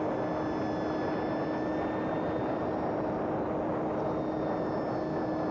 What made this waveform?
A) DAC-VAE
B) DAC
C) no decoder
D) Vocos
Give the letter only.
C